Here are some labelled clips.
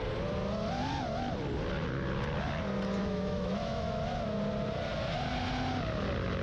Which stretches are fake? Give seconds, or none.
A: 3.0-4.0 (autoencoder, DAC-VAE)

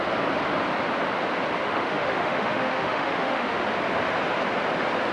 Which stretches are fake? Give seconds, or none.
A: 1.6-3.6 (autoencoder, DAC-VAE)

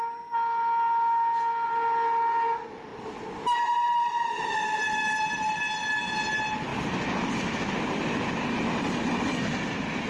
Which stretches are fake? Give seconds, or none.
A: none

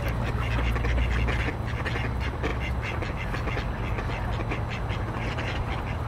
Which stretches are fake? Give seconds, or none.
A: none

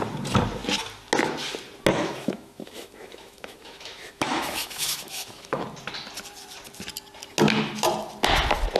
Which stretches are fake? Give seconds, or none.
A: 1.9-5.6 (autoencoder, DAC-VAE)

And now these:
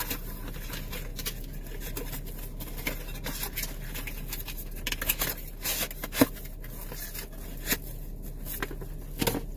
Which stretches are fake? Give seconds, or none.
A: none

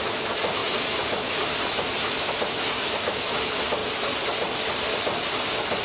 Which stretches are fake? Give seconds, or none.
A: 0.0-3.8 (autoencoder, DAC-VAE)